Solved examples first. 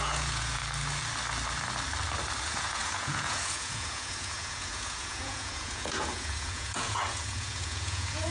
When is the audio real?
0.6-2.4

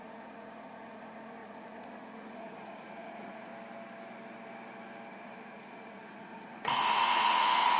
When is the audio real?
3.5-5.1